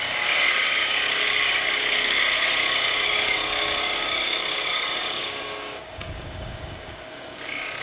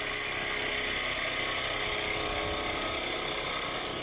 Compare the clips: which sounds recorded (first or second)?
second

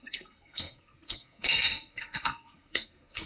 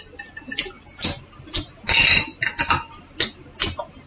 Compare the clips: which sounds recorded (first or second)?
second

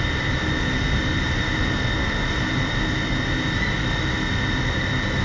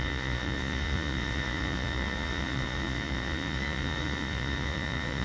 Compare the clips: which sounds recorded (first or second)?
first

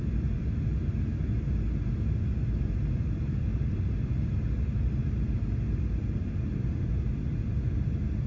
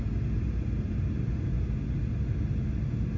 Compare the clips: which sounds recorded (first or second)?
second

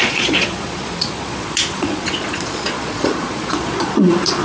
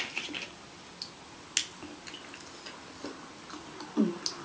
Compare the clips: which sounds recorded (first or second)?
second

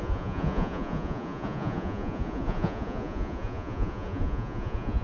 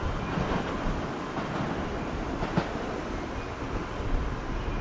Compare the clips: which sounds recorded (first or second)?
second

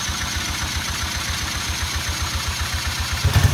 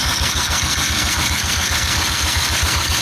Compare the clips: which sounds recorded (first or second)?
first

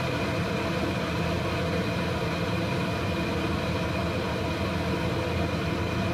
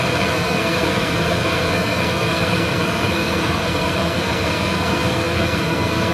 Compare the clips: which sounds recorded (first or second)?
first